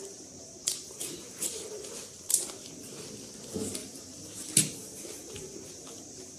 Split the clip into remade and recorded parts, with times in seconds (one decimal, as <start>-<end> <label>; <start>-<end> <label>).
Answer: 0.0-1.4 remade; 1.4-3.8 recorded; 3.8-6.4 remade